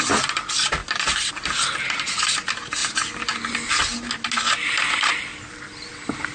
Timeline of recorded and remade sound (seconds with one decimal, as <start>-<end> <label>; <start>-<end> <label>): 0.0-0.8 recorded; 0.8-1.3 remade; 1.3-6.3 recorded